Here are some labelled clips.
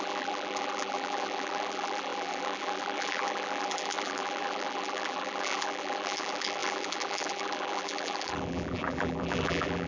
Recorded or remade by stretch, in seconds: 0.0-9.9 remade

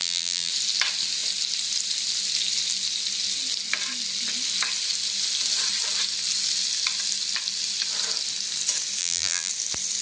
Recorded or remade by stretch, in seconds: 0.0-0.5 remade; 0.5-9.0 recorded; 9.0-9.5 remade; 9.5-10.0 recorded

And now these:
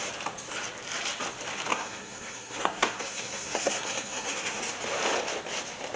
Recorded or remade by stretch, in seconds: 0.0-1.7 recorded; 1.7-4.6 remade; 4.6-6.0 recorded